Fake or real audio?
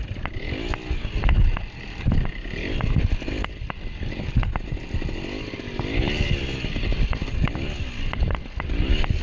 real